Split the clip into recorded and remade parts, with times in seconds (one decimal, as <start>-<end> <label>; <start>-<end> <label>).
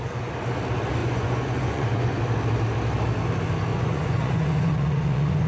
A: 0.0-1.0 recorded; 1.0-2.2 remade; 2.2-3.7 recorded; 3.7-5.5 remade